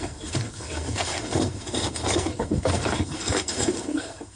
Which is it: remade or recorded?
remade